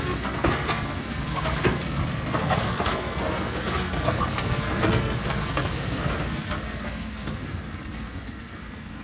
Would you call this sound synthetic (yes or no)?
yes